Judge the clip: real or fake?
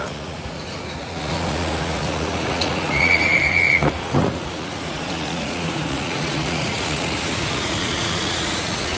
fake